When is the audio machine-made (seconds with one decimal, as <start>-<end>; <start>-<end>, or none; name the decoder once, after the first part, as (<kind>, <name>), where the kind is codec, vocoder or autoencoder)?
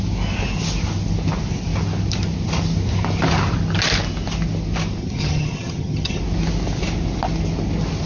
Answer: 5.0-6.2 (vocoder, HiFi-GAN)